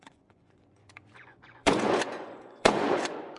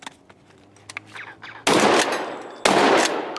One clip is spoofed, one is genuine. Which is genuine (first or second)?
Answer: second